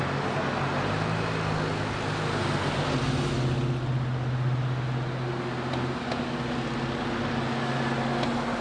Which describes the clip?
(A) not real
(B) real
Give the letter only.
B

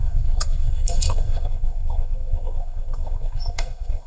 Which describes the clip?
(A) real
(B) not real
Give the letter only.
B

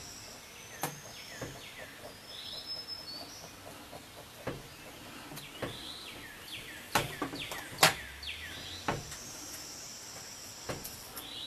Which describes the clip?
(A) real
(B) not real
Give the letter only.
A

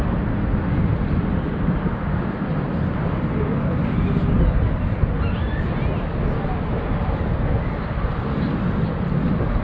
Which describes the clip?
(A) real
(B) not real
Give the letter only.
A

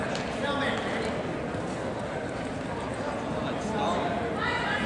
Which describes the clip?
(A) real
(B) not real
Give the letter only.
A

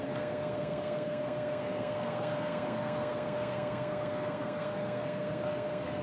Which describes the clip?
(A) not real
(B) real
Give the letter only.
A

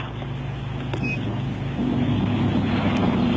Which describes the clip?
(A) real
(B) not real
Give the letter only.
A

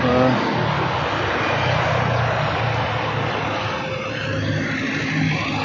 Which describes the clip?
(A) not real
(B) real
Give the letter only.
B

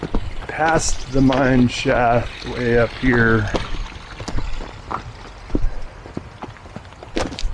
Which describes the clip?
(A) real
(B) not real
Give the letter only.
A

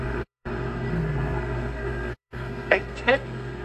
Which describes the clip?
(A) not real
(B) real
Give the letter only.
A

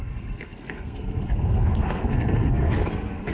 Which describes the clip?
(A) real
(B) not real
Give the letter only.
B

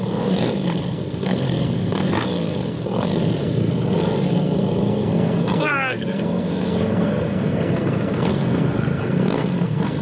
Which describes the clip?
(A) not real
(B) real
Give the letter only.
A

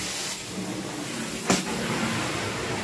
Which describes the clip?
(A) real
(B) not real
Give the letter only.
A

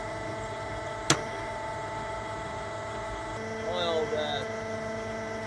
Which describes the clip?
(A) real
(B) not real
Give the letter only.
A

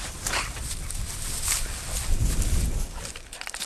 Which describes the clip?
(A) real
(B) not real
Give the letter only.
A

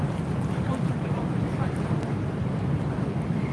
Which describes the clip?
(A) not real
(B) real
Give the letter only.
B